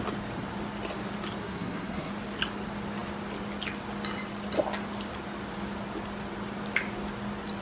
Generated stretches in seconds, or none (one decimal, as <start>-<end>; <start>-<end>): 1.4-2.1